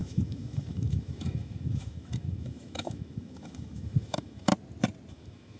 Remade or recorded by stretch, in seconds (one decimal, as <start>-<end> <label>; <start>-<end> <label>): 0.0-4.5 remade; 4.5-5.1 recorded; 5.1-5.6 remade